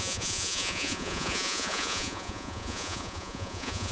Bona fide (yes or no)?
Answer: no